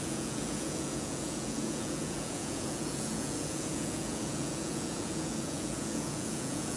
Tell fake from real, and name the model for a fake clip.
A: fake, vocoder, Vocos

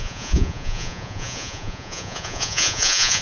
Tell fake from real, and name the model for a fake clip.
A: fake, vocoder, Vocos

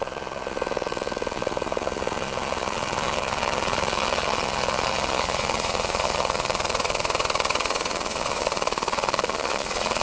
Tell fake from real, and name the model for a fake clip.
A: fake, vocoder, Vocos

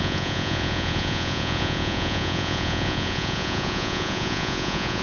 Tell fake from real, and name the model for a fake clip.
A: fake, vocoder, Vocos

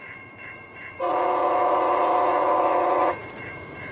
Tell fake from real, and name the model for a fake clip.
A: fake, vocoder, Vocos